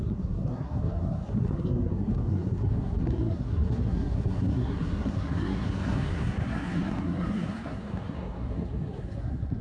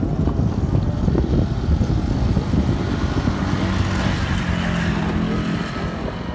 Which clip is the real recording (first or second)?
second